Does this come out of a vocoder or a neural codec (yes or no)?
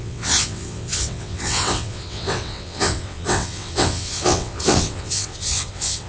yes